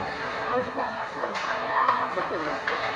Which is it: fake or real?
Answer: fake